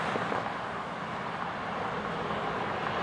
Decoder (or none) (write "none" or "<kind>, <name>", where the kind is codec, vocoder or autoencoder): none